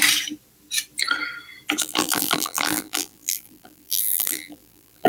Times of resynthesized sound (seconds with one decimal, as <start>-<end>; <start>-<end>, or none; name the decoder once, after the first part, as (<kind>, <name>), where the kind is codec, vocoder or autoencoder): 1.8-5.1 (vocoder, BigVGAN v2)